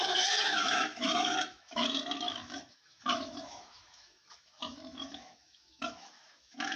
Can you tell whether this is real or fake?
fake